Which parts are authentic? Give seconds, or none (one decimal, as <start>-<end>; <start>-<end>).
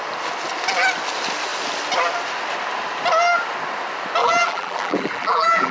0.0-4.2